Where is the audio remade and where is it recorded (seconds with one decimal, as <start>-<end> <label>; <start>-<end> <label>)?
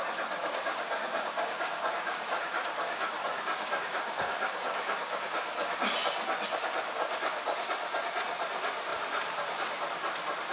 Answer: 0.0-0.4 recorded; 0.4-5.1 remade; 5.1-10.5 recorded